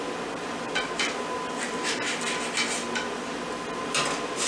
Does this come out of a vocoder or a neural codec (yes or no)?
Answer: no